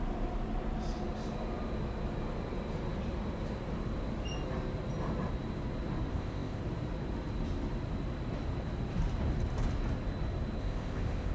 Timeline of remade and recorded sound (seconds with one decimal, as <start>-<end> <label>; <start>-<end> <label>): 0.0-6.1 recorded; 6.1-6.6 remade; 6.6-10.6 recorded; 10.6-11.3 remade